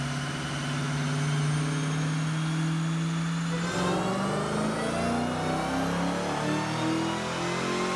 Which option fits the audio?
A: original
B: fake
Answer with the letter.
A